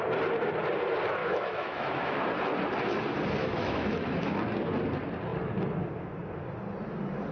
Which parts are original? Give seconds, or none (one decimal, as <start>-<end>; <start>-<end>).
0.0-1.2; 2.2-3.4; 4.4-7.3